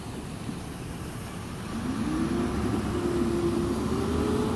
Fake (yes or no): no